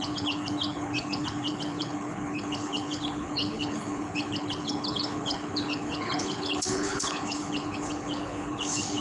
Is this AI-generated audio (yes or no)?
yes